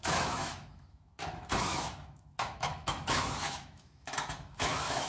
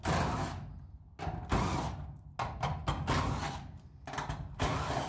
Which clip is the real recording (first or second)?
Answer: second